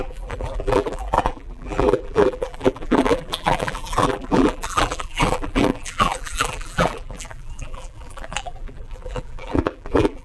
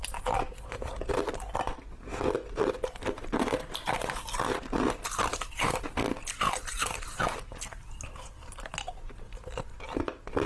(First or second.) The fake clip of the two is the first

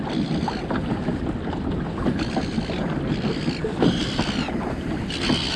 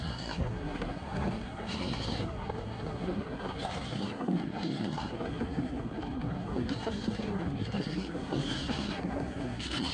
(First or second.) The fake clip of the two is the second